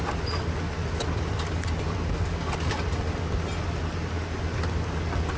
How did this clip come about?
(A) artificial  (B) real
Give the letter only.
B